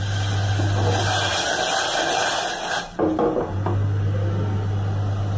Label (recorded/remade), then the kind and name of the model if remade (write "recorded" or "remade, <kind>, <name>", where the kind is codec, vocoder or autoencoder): recorded